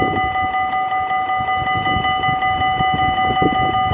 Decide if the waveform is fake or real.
real